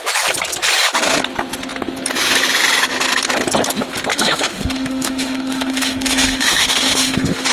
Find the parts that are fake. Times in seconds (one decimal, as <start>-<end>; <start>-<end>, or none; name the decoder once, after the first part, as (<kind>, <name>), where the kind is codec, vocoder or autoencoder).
4.1-7.5 (autoencoder, DAC-VAE)